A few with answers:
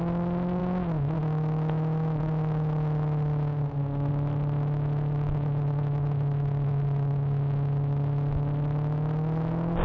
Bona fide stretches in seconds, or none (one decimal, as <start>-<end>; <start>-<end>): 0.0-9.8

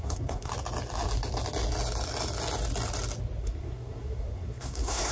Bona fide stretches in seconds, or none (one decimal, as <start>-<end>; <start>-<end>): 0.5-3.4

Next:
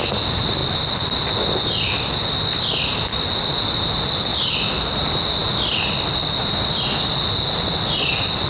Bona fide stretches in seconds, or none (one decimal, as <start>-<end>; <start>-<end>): 0.0-8.5